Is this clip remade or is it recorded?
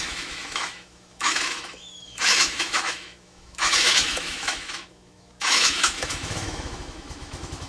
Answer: remade